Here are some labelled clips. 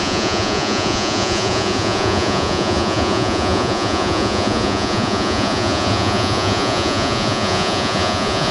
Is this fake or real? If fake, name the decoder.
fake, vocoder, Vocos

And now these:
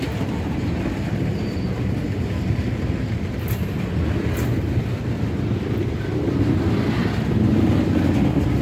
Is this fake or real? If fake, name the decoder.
real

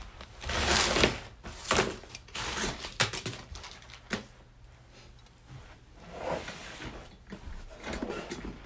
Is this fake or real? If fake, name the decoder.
real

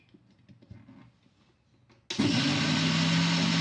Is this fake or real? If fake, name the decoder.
real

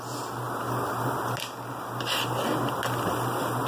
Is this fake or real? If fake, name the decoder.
real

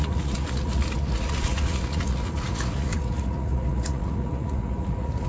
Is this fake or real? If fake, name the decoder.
fake, vocoder, Vocos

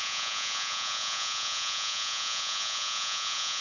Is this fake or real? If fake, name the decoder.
fake, vocoder, Vocos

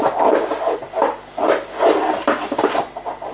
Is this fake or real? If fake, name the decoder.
real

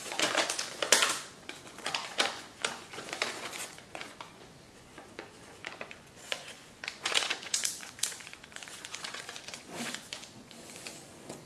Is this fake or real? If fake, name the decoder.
fake, vocoder, Vocos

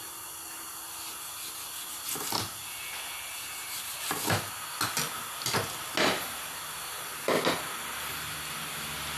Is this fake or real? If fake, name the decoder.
real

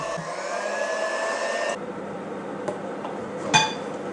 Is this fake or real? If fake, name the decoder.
real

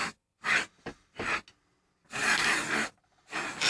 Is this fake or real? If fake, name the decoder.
real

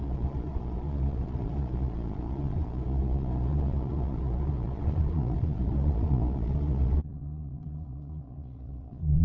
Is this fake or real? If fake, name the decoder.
fake, vocoder, Vocos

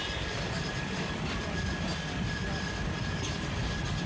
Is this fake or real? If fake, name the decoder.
real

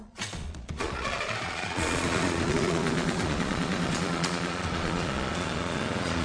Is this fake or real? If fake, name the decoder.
fake, vocoder, Vocos